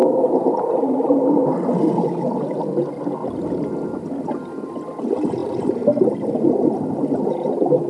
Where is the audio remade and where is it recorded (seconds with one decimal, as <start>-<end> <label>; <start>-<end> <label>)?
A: 0.0-7.9 recorded